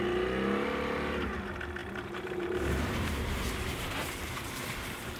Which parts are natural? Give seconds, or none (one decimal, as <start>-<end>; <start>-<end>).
0.0-1.8; 4.6-5.2